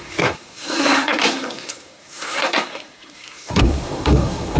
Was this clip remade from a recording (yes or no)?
yes